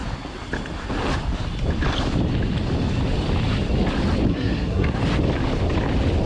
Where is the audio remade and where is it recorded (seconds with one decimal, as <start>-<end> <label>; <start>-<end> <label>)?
0.0-4.3 recorded; 4.3-5.0 remade; 5.0-6.3 recorded